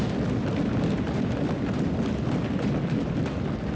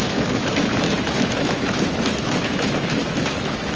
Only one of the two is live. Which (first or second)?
first